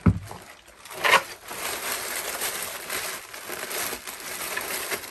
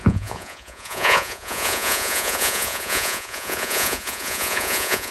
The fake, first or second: second